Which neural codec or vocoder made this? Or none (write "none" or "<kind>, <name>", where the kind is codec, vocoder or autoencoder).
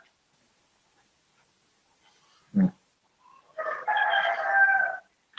none